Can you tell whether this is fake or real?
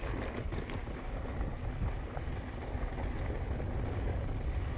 real